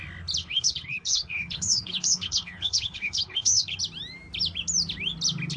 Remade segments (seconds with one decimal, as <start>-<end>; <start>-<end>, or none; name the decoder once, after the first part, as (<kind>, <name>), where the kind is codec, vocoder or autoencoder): 0.4-3.8 (codec, HILCodec)